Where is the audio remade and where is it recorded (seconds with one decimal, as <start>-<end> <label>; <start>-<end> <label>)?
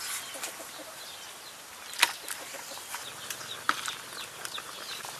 0.0-5.2 remade